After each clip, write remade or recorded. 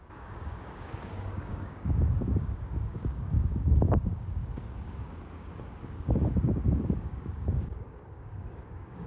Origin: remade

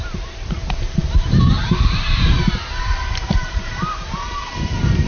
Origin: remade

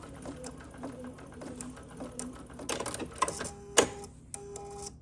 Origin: recorded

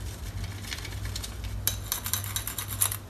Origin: recorded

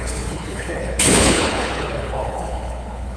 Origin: remade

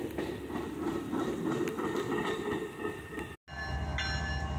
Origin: recorded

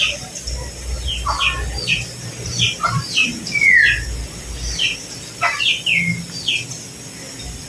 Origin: recorded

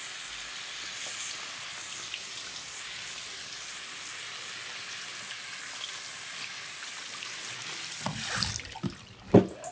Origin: recorded